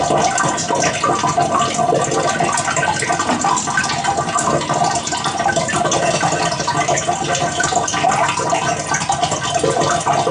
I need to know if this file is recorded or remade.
recorded